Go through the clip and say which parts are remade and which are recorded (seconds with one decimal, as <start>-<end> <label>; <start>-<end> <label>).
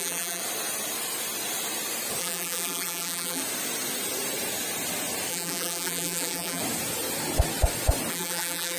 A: 0.0-0.4 remade; 0.4-2.2 recorded; 2.2-3.4 remade; 3.4-5.3 recorded; 5.3-6.6 remade; 6.6-8.1 recorded; 8.1-8.8 remade